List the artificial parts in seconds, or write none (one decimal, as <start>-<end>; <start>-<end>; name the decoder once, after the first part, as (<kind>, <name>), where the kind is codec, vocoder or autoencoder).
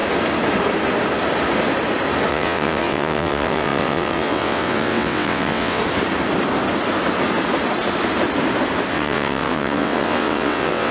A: 2.3-5.8 (vocoder, WaveNeXt); 8.9-10.9